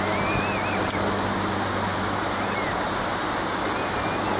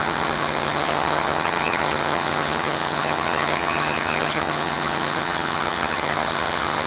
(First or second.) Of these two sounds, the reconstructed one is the second